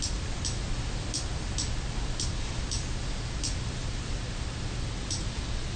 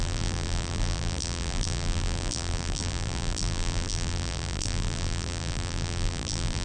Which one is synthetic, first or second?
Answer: second